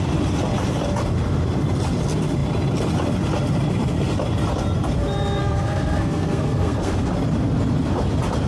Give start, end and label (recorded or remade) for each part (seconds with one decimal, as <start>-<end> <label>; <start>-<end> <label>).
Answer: 0.0-5.4 recorded; 5.4-7.1 remade; 7.1-8.5 recorded